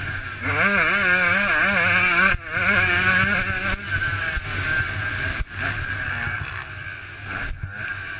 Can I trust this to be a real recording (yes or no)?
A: yes